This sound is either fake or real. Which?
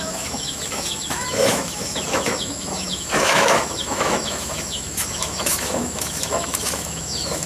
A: fake